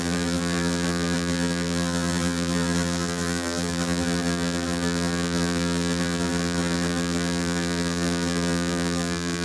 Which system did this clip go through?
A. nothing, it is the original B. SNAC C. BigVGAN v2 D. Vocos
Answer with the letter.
C